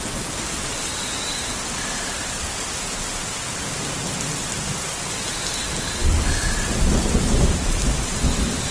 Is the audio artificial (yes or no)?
no